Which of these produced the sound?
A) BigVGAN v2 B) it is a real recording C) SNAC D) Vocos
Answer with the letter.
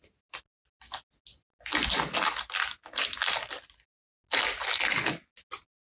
B